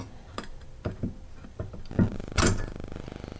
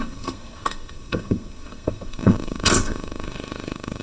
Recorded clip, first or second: first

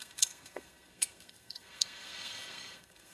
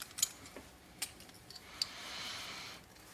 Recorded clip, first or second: second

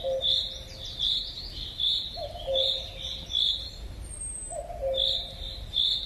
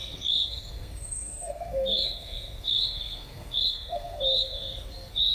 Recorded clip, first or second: first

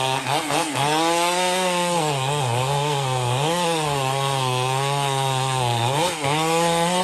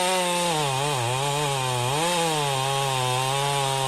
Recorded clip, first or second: second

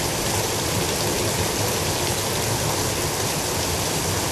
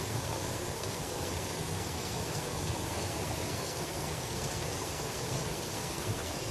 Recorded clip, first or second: first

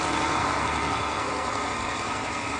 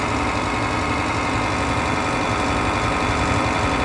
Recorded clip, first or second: second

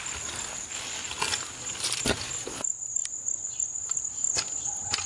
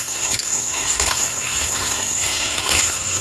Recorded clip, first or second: first